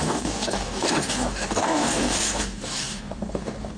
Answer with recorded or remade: remade